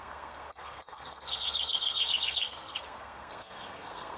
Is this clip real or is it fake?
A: fake